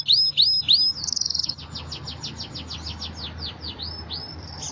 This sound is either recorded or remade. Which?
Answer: recorded